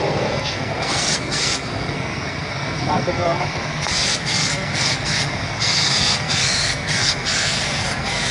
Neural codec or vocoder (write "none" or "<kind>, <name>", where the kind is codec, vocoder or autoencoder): codec, SNAC